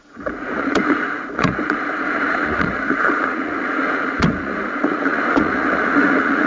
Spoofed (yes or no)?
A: yes